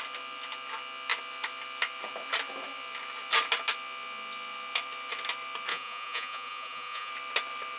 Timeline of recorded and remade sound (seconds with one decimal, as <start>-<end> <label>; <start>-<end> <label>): 0.0-5.7 recorded; 5.7-7.1 remade; 7.1-7.8 recorded

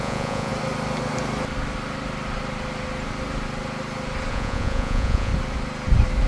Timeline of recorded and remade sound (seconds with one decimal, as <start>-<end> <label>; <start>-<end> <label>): 0.0-0.5 remade; 0.5-4.3 recorded; 4.3-5.3 remade; 5.3-6.3 recorded

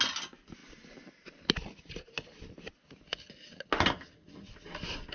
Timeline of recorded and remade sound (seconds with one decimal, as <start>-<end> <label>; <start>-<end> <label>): 0.0-5.1 recorded